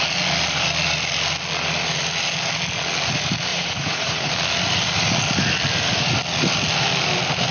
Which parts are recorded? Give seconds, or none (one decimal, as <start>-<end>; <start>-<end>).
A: 0.0-3.5; 4.3-7.5